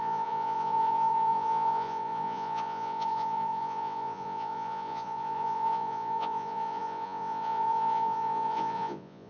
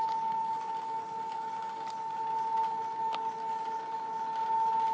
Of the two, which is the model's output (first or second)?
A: first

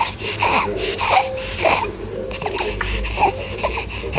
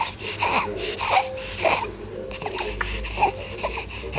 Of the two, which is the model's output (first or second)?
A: first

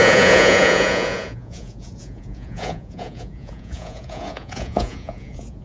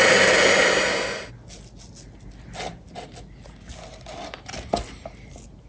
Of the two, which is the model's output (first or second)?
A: first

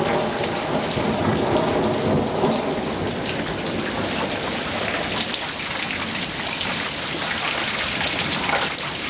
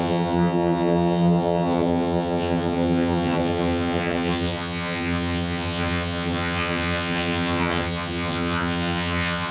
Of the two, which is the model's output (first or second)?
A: second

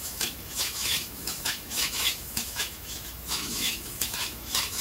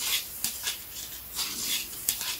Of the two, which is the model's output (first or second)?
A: first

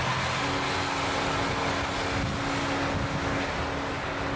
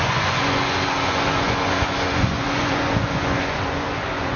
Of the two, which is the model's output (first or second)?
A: second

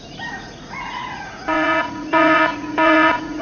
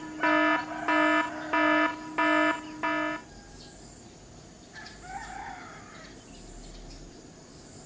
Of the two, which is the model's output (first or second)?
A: first